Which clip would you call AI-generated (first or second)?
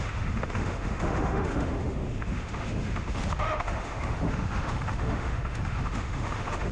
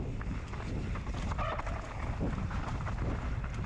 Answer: first